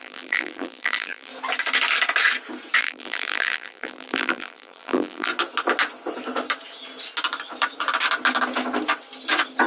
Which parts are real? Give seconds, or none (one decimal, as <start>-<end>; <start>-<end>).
1.3-2.8; 5.3-9.7